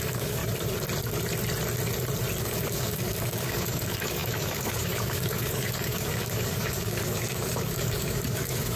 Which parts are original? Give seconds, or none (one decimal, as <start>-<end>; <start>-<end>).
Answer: 0.4-2.4